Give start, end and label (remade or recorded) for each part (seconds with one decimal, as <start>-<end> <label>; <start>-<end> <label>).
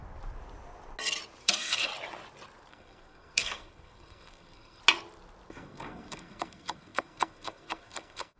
0.0-1.4 recorded; 1.4-1.9 remade; 1.9-2.7 recorded; 2.7-4.8 remade; 4.8-5.5 recorded; 5.5-8.4 remade